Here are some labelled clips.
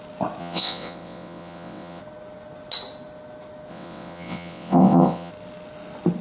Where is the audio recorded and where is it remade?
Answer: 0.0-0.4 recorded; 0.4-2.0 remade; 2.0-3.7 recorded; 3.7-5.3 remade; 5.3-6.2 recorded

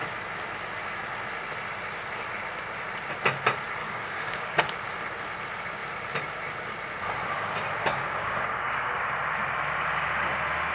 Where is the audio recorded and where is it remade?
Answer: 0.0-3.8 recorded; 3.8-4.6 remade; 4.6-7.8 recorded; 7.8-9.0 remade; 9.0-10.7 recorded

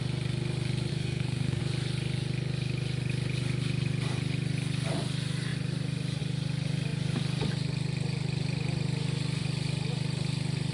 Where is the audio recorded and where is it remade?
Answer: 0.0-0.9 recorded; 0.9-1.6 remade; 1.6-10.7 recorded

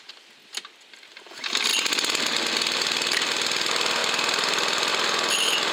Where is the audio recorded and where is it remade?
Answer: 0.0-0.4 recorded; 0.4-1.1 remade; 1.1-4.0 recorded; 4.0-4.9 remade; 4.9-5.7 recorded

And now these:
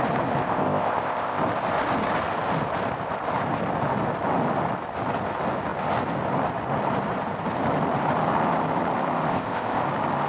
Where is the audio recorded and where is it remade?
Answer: 0.0-0.4 recorded; 0.4-1.4 remade; 1.4-9.3 recorded; 9.3-9.8 remade; 9.8-10.3 recorded

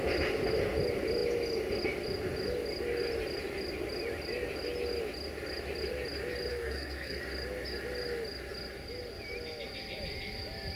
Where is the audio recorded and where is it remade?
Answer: 0.0-6.5 recorded; 6.5-7.2 remade; 7.2-10.8 recorded

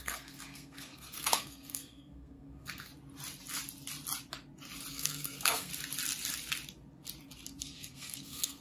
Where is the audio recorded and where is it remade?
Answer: 0.0-2.9 remade; 2.9-4.9 recorded; 4.9-5.7 remade; 5.7-7.6 recorded; 7.6-8.6 remade

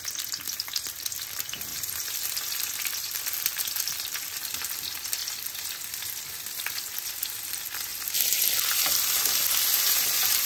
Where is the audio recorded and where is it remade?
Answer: 0.0-10.5 recorded